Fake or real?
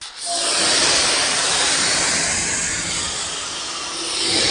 real